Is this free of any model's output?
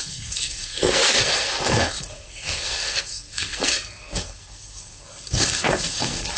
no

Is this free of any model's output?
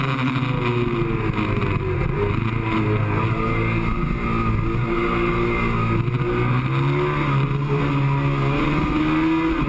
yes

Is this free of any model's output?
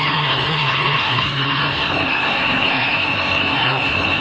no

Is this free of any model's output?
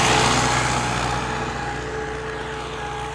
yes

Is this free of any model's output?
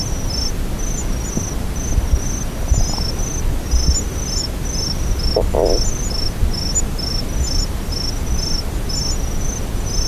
yes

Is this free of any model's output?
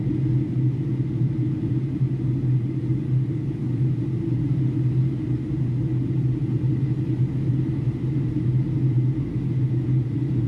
yes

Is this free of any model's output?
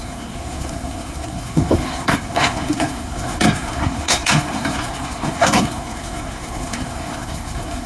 no